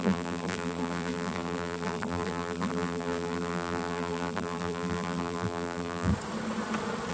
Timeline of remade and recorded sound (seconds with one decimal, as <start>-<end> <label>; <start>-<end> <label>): 0.0-6.1 remade; 6.1-7.1 recorded

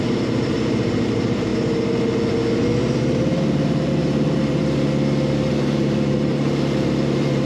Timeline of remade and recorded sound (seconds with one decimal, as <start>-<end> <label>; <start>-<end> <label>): 0.0-1.5 remade; 1.5-3.0 recorded; 3.0-4.6 remade; 4.6-5.5 recorded; 5.5-7.5 remade

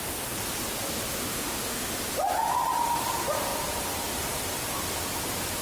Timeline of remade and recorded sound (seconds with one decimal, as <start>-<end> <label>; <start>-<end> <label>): 0.0-1.2 recorded; 1.2-1.9 remade; 1.9-5.6 recorded

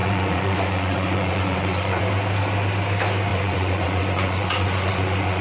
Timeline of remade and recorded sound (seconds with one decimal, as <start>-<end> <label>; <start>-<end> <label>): 0.0-2.0 remade; 2.0-3.3 recorded; 3.3-5.4 remade

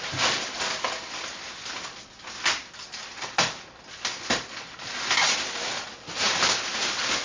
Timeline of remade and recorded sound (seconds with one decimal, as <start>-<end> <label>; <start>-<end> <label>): 0.0-7.2 recorded